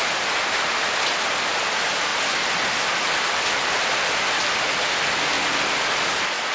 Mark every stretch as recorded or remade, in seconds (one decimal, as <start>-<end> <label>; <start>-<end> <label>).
0.0-6.5 recorded